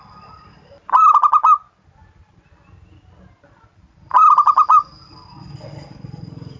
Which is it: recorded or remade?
recorded